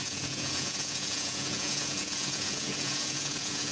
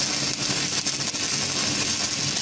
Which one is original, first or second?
second